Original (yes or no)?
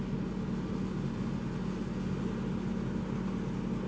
yes